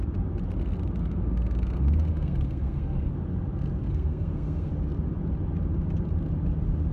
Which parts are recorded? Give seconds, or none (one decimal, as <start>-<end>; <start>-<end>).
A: 0.0-1.0; 3.1-3.8; 4.7-6.9